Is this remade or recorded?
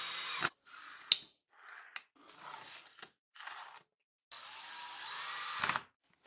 recorded